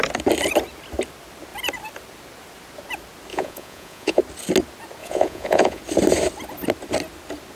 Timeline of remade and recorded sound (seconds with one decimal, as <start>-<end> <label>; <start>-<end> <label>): 0.0-3.3 recorded; 3.3-4.2 remade; 4.2-5.0 recorded; 5.0-5.8 remade; 5.8-7.6 recorded